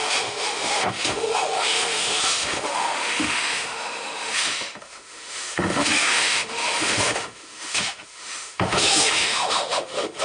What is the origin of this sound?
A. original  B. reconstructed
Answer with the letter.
B